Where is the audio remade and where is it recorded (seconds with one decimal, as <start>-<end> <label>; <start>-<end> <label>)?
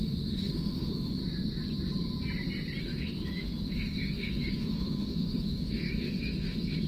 0.0-1.2 remade; 1.2-2.8 recorded; 2.8-6.9 remade